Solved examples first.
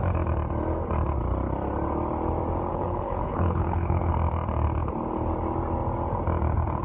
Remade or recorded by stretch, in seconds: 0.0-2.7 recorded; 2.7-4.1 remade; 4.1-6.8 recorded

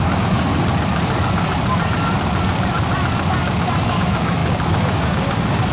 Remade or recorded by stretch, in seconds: 0.0-0.5 remade; 0.5-3.9 recorded; 3.9-5.7 remade

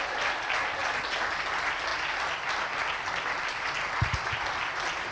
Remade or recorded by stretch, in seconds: 0.0-5.1 recorded

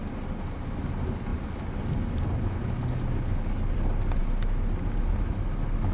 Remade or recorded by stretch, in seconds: 0.0-5.9 recorded

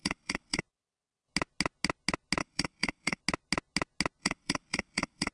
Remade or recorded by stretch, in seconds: 0.0-0.6 remade; 0.6-2.4 recorded; 2.4-3.2 remade; 3.2-4.2 recorded; 4.2-5.3 remade

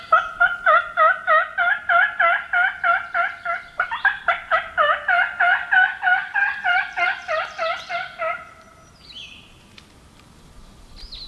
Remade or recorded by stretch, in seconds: 0.0-11.3 recorded

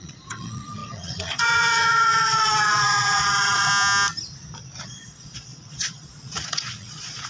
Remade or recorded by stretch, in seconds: 0.0-3.7 remade; 3.7-4.8 recorded; 4.8-7.3 remade

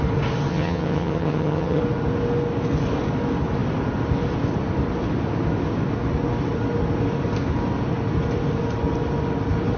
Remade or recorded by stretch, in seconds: 0.0-0.5 recorded; 0.5-1.8 remade; 1.8-9.8 recorded